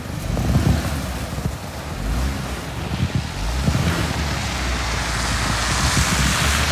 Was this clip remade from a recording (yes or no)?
no